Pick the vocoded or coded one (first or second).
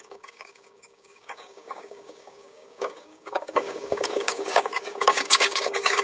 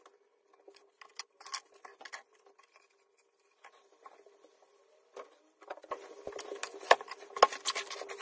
first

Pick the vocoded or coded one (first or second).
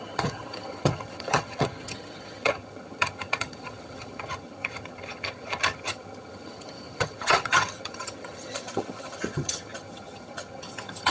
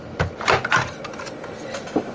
first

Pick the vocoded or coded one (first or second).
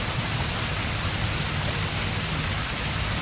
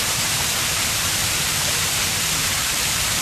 second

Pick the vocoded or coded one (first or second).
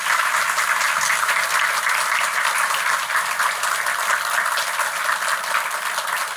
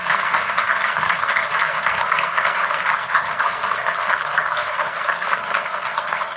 second